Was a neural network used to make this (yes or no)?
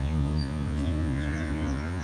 yes